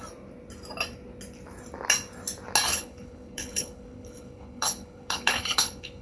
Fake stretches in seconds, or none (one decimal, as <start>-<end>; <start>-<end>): 2.7-6.0